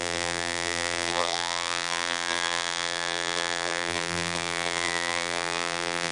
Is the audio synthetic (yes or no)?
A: yes